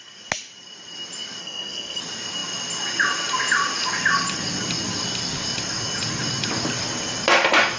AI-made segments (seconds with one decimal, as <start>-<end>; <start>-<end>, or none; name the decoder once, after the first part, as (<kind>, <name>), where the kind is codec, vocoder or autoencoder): 1.4-2.0 (codec, SNAC)